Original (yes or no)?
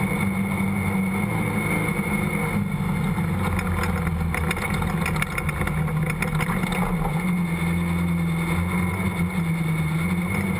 yes